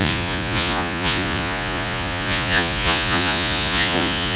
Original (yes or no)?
no